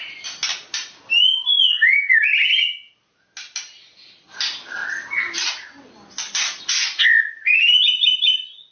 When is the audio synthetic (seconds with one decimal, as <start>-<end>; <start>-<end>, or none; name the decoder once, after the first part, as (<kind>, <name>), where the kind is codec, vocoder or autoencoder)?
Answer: none